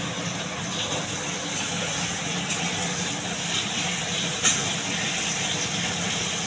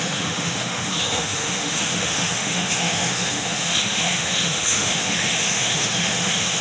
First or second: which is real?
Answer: first